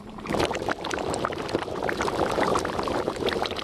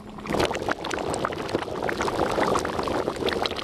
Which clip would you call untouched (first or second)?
second